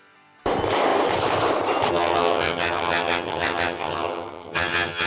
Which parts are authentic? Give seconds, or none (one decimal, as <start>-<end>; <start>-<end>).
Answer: 0.0-1.9